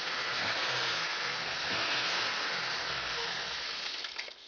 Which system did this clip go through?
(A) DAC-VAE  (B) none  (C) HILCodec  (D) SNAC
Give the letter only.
D